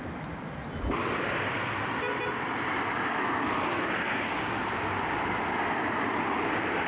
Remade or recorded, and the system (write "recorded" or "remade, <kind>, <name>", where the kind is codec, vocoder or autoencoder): recorded